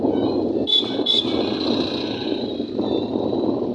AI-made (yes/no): no